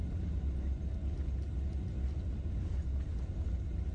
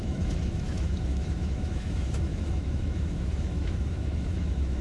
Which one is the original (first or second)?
first